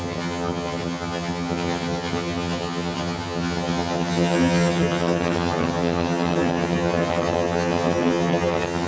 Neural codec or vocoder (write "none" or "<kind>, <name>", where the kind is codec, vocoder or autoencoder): vocoder, HiFi-GAN